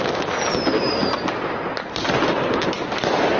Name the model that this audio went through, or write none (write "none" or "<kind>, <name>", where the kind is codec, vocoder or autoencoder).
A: none